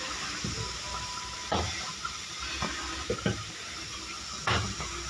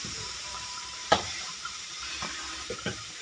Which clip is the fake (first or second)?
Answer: second